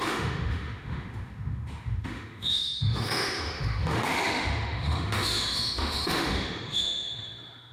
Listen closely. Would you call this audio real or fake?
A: fake